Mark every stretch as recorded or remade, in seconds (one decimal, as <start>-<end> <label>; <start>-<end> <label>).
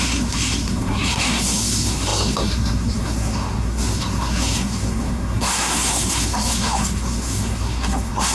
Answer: 0.0-8.3 remade